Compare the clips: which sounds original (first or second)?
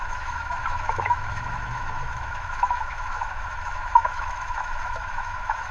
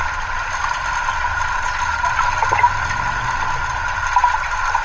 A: second